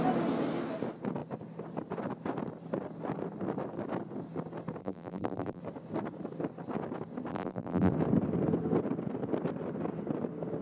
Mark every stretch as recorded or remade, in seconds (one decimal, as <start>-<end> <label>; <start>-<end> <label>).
0.0-4.8 recorded; 4.8-5.6 remade; 5.6-7.3 recorded; 7.3-7.9 remade; 7.9-10.6 recorded